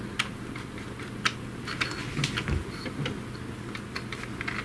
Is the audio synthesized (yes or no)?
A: no